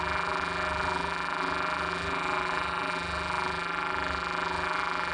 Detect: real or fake fake